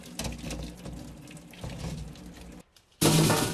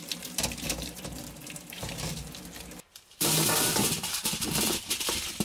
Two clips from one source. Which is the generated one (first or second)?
second